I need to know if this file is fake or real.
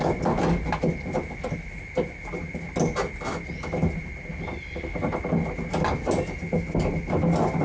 real